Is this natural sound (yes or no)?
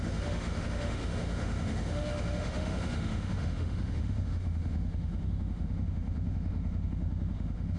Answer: no